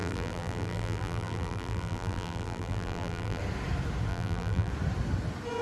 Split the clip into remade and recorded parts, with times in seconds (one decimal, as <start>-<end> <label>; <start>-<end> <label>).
0.0-3.4 remade; 3.4-4.1 recorded; 4.1-4.7 remade; 4.7-5.6 recorded